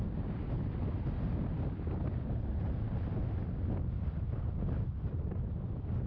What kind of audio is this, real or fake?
real